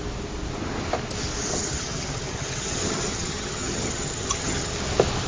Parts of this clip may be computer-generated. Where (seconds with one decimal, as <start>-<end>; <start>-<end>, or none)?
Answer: 1.5-4.7